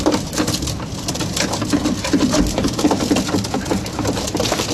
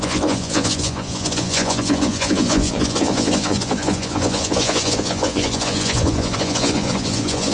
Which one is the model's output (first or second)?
second